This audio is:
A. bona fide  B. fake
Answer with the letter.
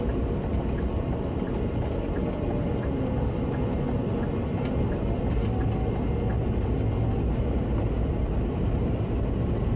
A